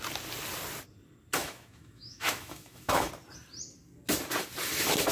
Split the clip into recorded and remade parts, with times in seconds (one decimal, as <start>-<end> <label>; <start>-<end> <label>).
0.0-1.4 recorded; 1.4-3.1 remade; 3.1-5.1 recorded